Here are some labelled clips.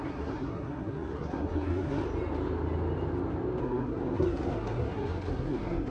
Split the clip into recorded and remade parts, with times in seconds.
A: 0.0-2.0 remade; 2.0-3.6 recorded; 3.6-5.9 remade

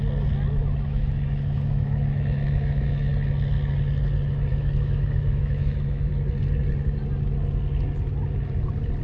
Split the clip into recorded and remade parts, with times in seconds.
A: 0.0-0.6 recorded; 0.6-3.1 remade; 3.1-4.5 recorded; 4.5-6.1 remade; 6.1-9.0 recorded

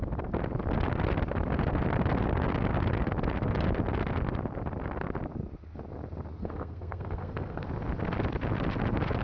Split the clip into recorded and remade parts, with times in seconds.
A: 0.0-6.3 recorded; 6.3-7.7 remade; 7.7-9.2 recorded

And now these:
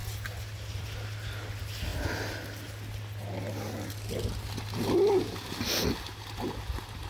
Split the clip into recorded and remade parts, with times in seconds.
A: 0.0-7.1 recorded

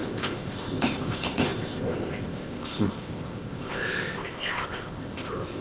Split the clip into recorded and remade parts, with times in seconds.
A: 0.0-5.6 remade

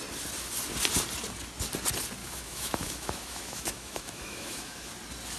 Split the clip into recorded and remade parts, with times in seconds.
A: 0.0-2.2 recorded; 2.2-4.9 remade; 4.9-5.4 recorded